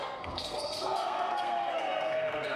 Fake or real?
fake